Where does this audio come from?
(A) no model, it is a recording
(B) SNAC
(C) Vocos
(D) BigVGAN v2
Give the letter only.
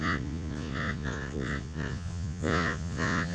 C